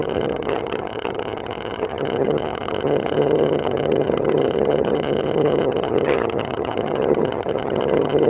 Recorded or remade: remade